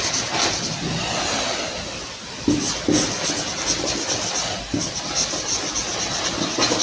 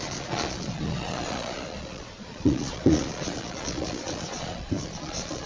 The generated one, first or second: second